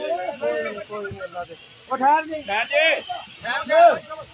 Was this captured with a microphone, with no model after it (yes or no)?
yes